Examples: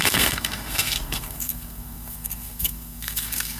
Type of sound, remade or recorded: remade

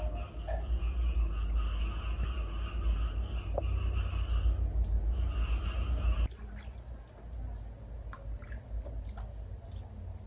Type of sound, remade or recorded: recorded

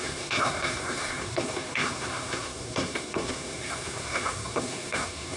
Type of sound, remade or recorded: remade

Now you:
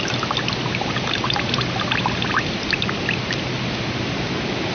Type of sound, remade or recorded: recorded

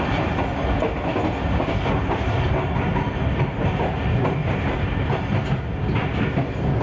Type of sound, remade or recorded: recorded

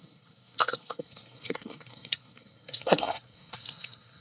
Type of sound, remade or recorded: remade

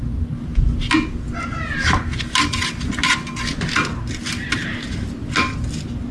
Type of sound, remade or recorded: recorded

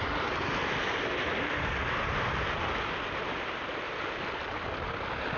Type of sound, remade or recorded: recorded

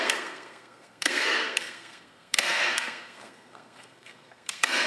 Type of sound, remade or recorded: remade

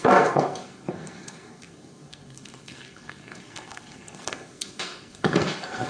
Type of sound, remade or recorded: remade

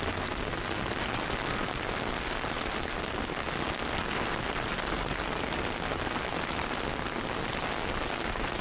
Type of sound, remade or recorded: recorded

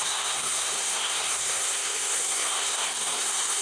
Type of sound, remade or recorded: remade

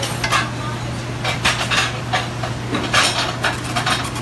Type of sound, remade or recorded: recorded